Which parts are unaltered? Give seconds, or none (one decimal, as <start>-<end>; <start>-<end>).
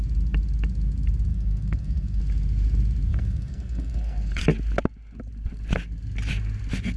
0.0-1.3; 2.2-3.1; 4.4-7.0